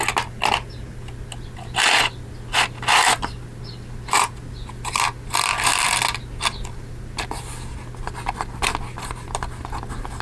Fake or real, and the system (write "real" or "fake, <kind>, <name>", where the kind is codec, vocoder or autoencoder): real